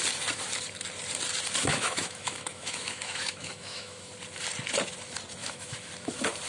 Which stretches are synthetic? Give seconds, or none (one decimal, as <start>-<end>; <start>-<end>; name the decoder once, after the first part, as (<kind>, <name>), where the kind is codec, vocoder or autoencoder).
1.7-4.1 (autoencoder, DAC-VAE); 5.4-5.9